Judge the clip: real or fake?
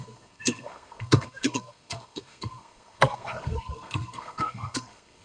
fake